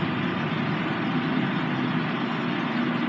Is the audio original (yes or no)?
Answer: yes